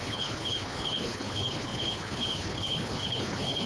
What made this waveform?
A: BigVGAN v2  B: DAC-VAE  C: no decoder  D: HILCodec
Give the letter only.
D